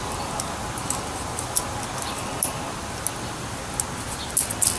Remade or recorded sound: recorded